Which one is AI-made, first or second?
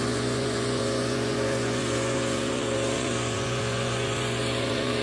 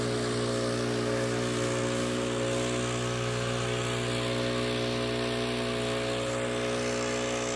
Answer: first